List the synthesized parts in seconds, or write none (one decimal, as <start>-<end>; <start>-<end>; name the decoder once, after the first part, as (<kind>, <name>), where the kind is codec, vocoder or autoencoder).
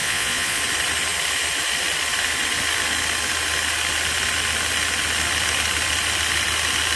0.0-0.6 (vocoder, Vocos)